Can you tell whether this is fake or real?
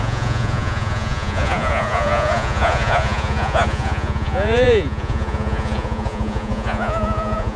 fake